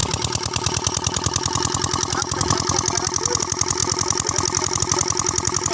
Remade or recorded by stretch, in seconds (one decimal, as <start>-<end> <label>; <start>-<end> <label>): 0.0-3.8 recorded; 3.8-4.8 remade; 4.8-5.7 recorded